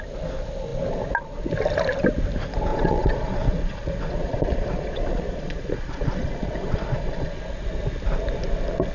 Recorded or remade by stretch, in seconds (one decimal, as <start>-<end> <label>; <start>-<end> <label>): 0.0-2.7 recorded; 2.7-7.3 remade; 7.3-8.9 recorded